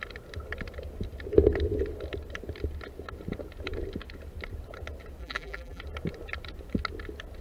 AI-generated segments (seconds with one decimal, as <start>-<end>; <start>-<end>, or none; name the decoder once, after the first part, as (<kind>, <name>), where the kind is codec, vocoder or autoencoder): 5.2-5.8 (vocoder, BigVGAN v2)